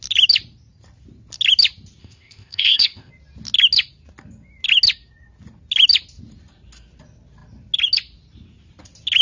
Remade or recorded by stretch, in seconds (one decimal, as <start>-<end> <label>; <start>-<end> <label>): 0.0-2.0 recorded; 2.0-3.1 remade; 3.1-9.2 recorded